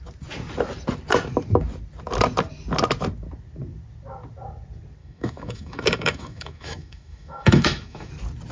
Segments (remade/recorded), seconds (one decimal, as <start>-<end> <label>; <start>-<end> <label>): 0.0-5.0 recorded; 5.0-8.1 remade; 8.1-8.5 recorded